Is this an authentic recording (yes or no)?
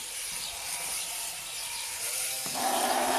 no